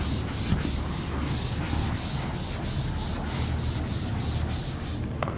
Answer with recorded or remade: recorded